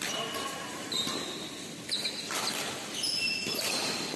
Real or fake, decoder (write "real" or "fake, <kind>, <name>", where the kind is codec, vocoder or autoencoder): real